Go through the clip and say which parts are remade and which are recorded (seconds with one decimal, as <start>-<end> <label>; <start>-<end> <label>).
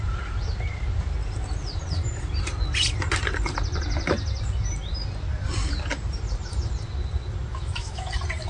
0.0-7.5 recorded; 7.5-8.1 remade; 8.1-8.5 recorded